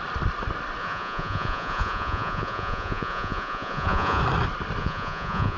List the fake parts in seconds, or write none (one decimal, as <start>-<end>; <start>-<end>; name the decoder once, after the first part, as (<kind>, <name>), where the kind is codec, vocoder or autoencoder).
0.8-4.2 (vocoder, Vocos); 4.8-5.6

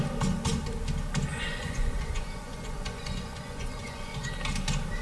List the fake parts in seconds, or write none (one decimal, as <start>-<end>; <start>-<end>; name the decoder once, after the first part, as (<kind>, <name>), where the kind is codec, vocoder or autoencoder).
1.3-4.3 (vocoder, Vocos)

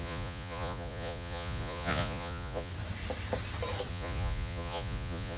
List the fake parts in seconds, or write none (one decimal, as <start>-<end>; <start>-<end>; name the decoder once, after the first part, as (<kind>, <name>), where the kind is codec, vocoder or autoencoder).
0.0-2.7 (vocoder, Vocos); 3.9-5.4

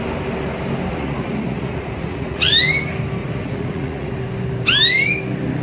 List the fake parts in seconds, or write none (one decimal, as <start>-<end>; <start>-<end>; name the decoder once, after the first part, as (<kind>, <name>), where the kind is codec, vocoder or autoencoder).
0.9-2.5 (vocoder, Vocos); 3.2-4.1